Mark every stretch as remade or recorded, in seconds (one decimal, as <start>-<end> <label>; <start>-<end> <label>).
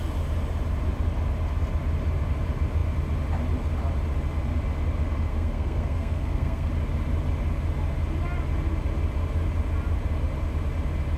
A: 0.0-5.3 recorded; 5.3-6.7 remade; 6.7-11.2 recorded